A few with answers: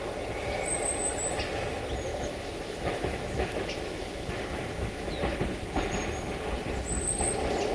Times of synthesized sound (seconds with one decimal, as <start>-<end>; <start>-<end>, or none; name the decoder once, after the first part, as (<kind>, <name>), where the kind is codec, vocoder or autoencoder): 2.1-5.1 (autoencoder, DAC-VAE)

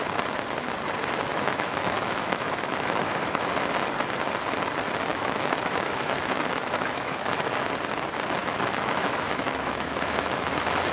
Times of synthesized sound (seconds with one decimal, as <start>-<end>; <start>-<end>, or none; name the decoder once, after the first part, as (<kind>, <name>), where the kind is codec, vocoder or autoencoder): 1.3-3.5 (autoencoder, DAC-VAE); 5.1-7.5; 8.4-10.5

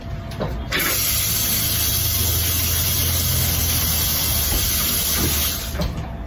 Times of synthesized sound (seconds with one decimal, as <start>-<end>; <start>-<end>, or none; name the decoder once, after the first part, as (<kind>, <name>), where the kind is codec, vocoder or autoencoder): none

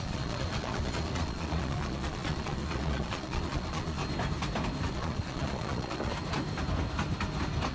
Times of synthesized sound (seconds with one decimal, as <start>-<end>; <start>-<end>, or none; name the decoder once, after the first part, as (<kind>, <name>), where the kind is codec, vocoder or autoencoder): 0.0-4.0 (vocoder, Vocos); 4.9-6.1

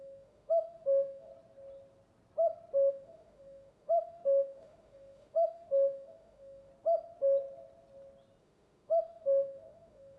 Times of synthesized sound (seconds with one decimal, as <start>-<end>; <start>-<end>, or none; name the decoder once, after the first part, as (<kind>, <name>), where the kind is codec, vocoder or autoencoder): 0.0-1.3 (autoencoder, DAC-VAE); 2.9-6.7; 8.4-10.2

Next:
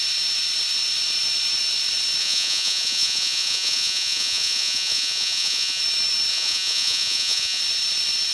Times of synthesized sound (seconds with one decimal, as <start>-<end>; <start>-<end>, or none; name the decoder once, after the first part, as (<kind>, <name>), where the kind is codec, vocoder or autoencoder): 2.2-5.8 (vocoder, Vocos); 6.3-7.6